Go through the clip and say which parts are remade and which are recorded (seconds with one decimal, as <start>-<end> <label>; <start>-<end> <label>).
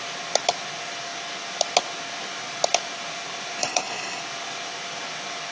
0.0-3.6 recorded; 3.6-4.2 remade; 4.2-5.5 recorded